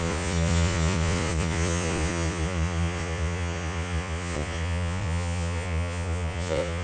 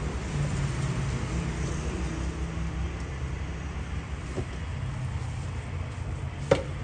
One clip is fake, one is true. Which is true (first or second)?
second